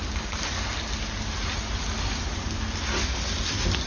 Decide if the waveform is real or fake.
real